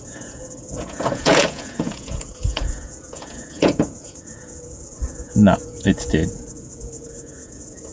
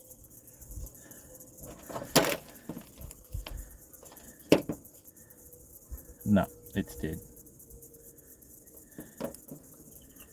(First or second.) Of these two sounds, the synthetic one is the first